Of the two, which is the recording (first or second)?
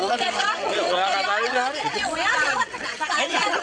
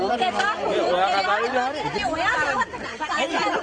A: second